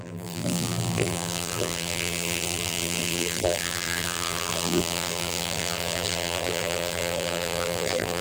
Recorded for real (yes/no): no